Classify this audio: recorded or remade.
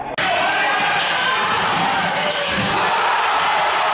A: recorded